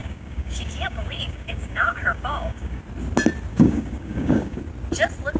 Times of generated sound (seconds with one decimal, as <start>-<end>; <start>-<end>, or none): 0.0-2.8; 3.5-4.6